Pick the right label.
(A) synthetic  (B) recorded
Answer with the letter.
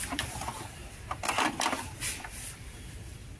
A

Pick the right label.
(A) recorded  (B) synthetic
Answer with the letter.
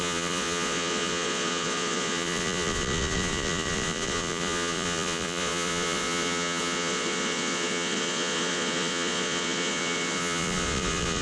B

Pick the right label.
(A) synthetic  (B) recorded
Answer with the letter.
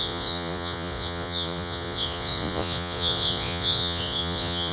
A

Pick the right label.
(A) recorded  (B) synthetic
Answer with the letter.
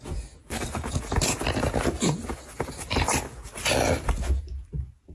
A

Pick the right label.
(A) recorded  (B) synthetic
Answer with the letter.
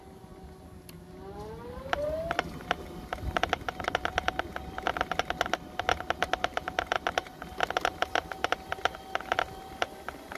A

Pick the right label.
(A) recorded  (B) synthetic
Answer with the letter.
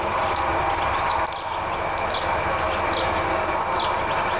A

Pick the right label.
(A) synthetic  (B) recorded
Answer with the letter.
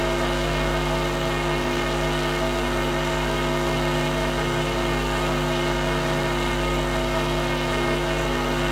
A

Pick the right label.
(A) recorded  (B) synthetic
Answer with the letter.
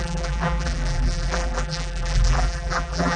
B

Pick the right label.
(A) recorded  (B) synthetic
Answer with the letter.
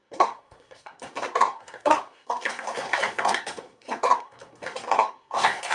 B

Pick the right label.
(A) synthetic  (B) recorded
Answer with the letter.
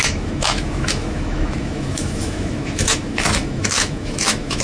A